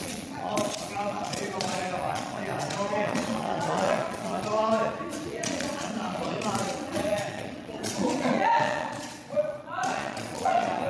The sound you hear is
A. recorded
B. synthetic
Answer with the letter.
B